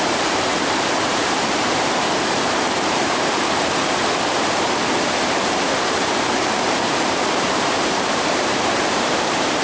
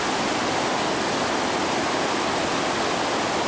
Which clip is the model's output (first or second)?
first